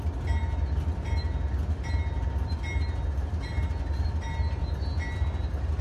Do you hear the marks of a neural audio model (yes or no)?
no